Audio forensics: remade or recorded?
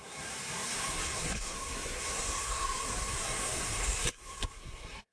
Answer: remade